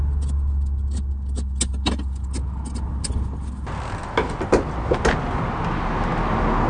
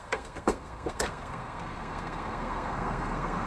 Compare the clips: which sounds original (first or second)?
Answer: first